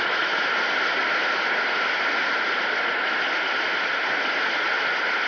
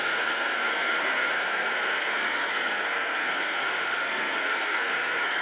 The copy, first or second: second